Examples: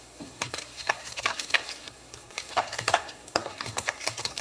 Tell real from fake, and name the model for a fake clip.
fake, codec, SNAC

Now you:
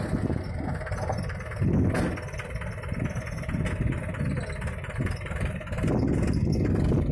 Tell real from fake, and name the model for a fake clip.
real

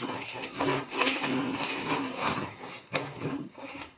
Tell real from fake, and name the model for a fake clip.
fake, codec, SNAC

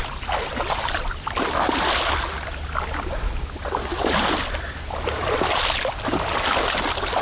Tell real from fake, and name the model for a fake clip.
real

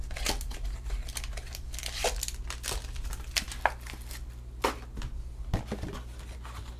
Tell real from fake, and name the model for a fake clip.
real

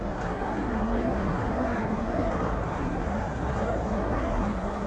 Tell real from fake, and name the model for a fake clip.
fake, codec, SNAC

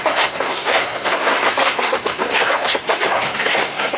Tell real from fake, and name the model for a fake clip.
fake, codec, SNAC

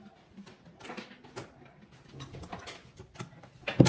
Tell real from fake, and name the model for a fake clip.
real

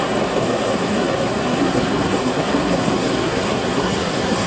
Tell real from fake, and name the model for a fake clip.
fake, codec, SNAC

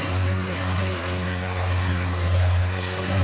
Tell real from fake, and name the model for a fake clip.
fake, codec, SNAC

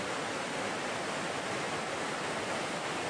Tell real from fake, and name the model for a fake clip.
real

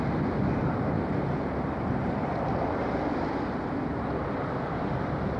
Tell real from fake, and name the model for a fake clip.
real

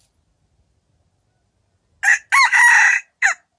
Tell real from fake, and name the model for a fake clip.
real